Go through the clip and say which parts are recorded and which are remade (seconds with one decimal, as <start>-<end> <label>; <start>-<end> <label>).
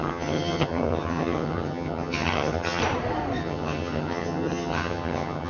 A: 0.0-2.8 remade; 2.8-3.4 recorded; 3.4-5.5 remade